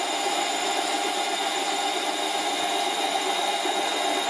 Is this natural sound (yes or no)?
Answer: yes